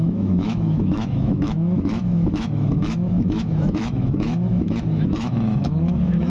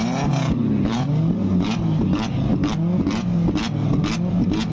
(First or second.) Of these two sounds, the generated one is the first